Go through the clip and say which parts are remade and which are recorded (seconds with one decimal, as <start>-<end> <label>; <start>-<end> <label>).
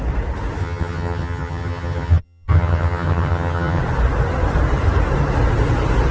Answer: 0.0-0.6 recorded; 0.6-3.8 remade; 3.8-6.1 recorded